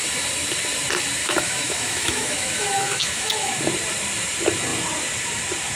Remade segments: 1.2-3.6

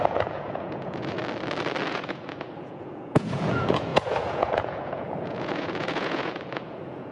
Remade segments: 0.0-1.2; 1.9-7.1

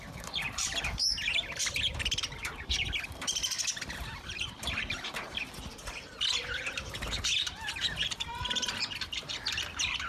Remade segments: 0.0-10.1

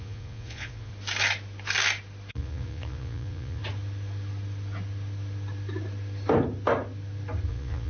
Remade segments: 0.0-0.9; 2.3-3.6; 7.5-7.9

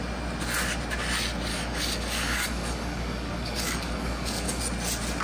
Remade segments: 1.5-4.6

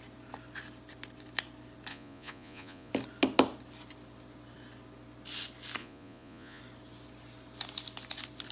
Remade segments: 1.9-2.9; 5.8-6.6

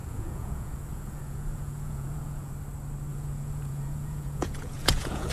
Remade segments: 0.0-2.5; 3.1-5.3

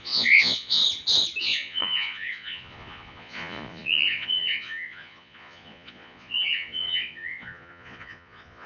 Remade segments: 0.0-0.8; 1.4-8.7